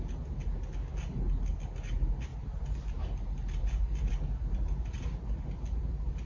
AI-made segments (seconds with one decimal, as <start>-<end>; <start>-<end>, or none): none